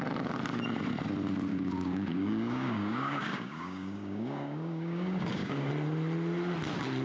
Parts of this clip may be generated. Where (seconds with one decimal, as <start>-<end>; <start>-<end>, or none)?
1.5-5.7

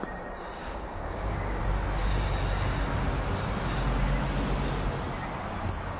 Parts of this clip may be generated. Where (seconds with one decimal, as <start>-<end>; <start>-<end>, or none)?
0.6-1.6

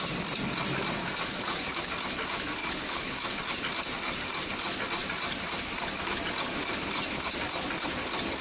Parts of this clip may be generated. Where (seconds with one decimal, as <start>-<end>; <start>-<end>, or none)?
1.0-1.9; 2.6-3.4

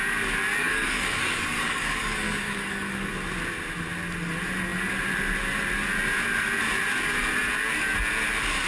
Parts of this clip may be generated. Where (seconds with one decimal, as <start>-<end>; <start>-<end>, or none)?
0.6-3.1